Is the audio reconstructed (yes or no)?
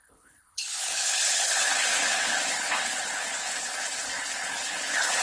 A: yes